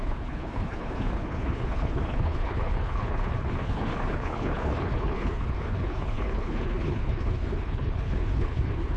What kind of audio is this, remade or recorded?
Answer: remade